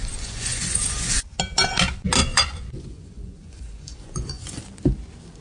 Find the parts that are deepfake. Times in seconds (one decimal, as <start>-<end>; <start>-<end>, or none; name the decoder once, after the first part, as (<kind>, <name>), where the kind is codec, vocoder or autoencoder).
0.0-1.2 (vocoder, Vocos); 2.2-4.6